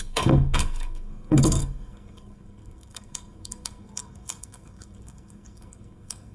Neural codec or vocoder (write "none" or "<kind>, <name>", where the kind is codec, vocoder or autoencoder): codec, SNAC